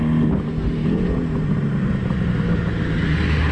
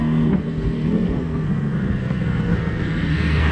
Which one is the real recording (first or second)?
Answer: first